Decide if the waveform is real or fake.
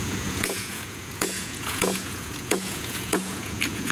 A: fake